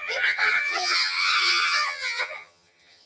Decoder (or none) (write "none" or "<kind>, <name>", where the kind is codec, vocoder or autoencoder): vocoder, HiFi-GAN